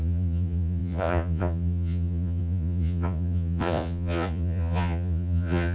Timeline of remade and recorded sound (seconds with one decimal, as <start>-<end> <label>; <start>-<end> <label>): 0.0-5.7 remade

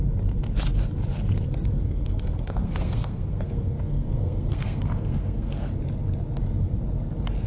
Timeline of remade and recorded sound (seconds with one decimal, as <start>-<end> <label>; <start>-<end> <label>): 0.0-1.8 recorded; 1.8-5.7 remade; 5.7-7.5 recorded